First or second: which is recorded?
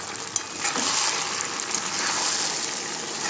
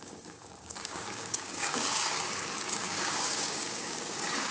first